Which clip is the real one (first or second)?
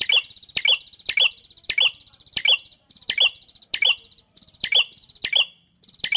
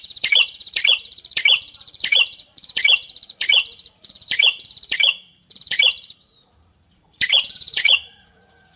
first